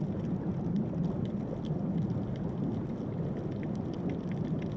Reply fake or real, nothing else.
real